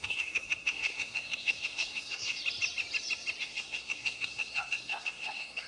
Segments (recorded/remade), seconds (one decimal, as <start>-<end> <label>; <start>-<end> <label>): 0.0-2.4 remade; 2.4-3.4 recorded; 3.4-5.7 remade